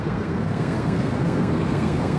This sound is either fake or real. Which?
fake